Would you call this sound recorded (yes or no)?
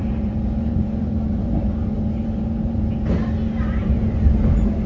no